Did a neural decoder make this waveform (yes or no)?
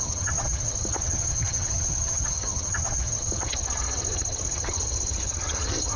yes